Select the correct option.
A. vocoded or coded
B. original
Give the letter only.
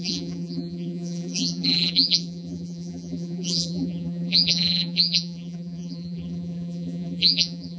A